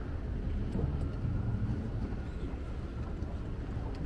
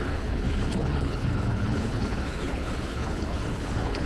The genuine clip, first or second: first